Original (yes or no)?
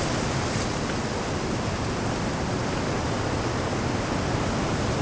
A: yes